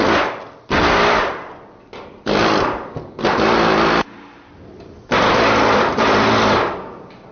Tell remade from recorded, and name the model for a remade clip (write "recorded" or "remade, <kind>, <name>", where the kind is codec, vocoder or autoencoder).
recorded